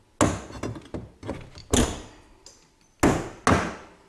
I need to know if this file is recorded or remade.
recorded